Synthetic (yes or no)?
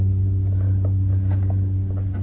no